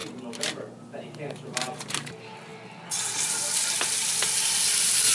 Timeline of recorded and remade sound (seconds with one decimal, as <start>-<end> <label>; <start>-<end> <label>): 0.0-5.1 recorded